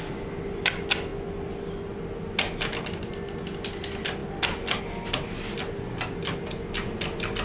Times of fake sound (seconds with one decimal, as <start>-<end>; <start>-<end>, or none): none